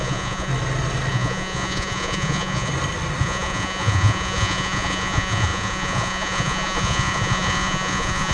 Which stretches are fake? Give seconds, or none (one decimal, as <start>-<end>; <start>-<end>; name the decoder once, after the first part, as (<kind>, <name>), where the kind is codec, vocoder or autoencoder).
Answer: 0.0-0.5 (vocoder, Vocos); 1.1-2.7; 3.2-8.3